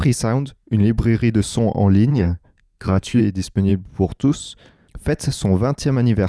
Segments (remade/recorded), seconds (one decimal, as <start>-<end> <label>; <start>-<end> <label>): 0.0-2.1 recorded; 2.1-3.2 remade; 3.2-6.3 recorded